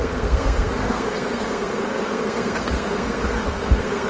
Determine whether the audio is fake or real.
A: fake